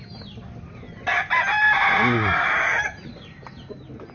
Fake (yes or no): no